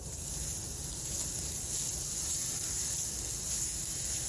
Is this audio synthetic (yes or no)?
no